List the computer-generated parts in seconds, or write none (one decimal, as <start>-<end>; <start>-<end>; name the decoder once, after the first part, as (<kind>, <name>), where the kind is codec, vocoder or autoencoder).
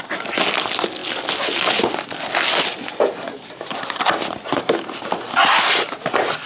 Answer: none